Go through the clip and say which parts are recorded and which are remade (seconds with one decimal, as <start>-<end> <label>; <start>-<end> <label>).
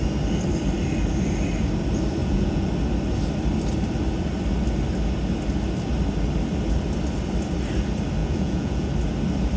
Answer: 0.0-2.2 recorded; 2.2-2.7 remade; 2.7-8.2 recorded; 8.2-8.9 remade; 8.9-9.6 recorded